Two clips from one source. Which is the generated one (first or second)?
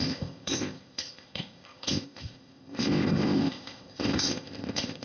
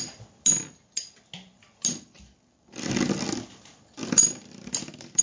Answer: first